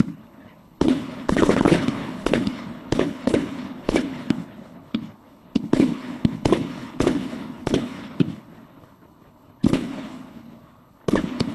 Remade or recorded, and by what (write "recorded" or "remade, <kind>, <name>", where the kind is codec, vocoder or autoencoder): remade, codec, HILCodec